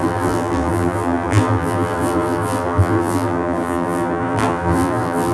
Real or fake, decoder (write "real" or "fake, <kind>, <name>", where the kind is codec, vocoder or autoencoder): fake, vocoder, BigVGAN v2